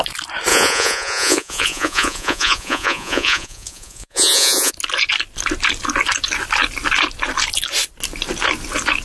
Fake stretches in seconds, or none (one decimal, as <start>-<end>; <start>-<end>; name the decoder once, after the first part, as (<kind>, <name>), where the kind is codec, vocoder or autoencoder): 0.5-4.7 (vocoder, Vocos)